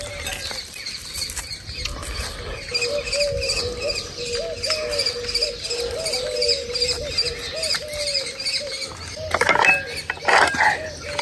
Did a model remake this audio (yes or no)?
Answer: no